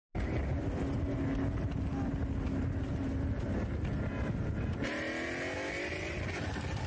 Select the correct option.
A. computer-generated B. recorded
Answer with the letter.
B